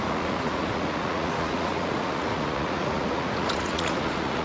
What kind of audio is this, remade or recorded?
remade